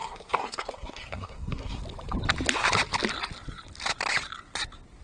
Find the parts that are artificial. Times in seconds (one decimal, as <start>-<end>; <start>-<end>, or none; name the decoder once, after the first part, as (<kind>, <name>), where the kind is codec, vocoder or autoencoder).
0.0-1.8 (codec, SNAC)